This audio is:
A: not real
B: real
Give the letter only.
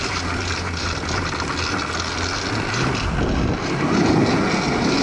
B